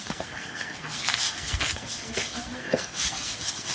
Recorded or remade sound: remade